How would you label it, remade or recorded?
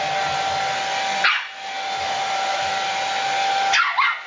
recorded